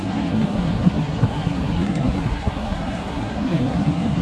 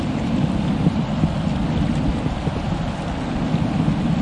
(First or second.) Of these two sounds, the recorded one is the second